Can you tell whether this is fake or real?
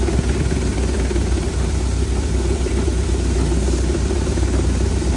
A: fake